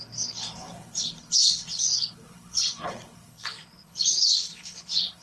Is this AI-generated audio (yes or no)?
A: yes